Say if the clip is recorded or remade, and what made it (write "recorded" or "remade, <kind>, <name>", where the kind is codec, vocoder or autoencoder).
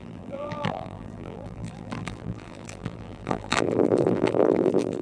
remade, vocoder, BigVGAN v2